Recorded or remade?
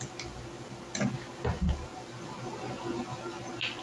recorded